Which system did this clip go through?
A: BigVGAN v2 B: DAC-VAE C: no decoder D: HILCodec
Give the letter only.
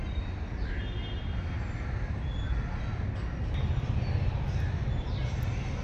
C